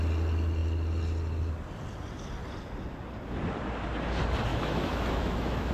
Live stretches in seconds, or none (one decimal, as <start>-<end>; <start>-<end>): 0.0-4.5